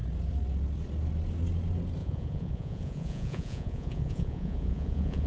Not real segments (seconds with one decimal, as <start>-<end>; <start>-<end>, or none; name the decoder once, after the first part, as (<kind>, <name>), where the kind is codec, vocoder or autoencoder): 2.0-5.3 (vocoder, Vocos)